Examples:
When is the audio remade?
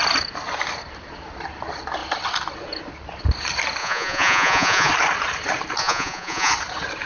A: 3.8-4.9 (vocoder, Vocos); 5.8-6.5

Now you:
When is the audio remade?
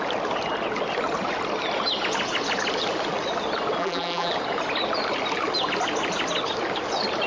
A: 3.8-4.3 (vocoder, BigVGAN v2)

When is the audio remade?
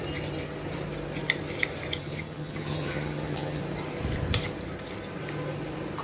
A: 2.0-3.6 (vocoder, HiFi-GAN)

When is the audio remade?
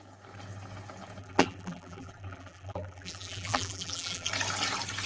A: 1.2-4.3 (vocoder, BigVGAN v2)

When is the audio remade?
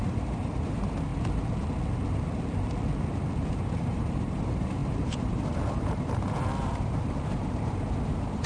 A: 0.0-1.1 (vocoder, BigVGAN v2); 3.5-8.5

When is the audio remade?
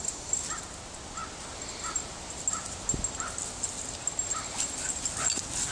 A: none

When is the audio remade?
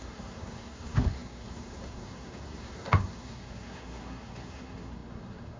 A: 0.0-5.6 (codec, SNAC)